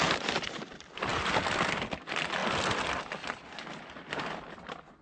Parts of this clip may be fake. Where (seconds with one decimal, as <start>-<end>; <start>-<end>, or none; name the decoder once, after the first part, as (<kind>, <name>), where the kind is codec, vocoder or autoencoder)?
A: none